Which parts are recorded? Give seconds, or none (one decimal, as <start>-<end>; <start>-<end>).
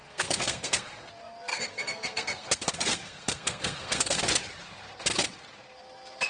1.1-1.5; 4.2-6.3